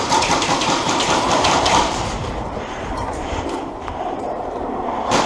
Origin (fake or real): fake